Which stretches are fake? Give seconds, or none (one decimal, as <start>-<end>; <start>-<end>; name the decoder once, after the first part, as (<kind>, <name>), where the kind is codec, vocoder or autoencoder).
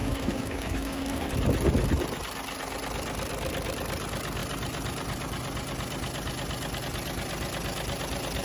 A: 0.0-1.3 (codec, DAC)